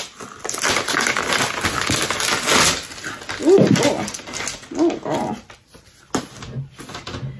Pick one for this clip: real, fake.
real